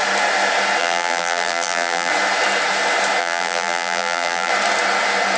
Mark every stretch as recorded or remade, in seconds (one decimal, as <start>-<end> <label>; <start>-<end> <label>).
0.0-0.8 recorded; 0.8-2.1 remade; 2.1-3.2 recorded; 3.2-4.5 remade; 4.5-5.4 recorded